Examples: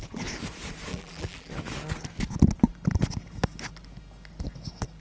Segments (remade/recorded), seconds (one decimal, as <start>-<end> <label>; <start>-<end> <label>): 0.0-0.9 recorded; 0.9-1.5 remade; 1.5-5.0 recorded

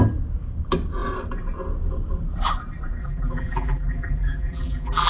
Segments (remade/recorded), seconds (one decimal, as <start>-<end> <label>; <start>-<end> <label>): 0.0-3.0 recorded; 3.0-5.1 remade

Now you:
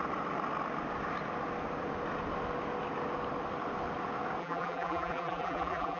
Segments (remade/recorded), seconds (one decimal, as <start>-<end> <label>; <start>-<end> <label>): 0.0-4.4 recorded; 4.4-6.0 remade